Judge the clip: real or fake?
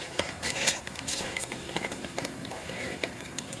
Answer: fake